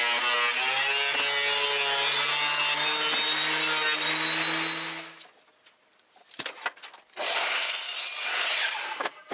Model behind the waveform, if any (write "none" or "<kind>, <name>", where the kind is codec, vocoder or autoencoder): none